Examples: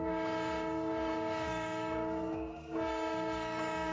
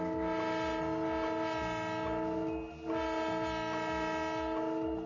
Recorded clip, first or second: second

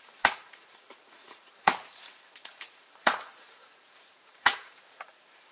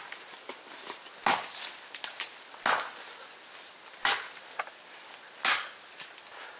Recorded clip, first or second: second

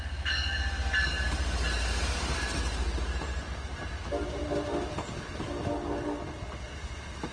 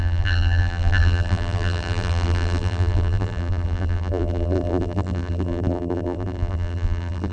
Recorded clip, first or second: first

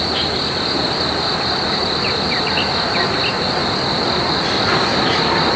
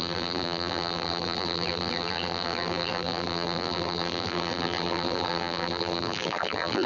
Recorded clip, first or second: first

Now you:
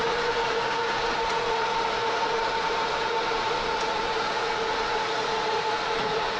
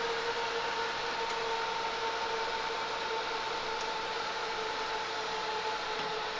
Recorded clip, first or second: second